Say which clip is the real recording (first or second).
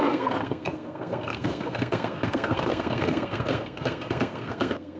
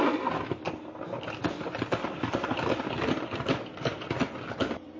second